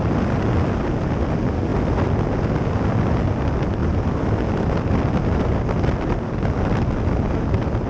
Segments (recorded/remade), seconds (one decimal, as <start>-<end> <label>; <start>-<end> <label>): 0.0-7.9 recorded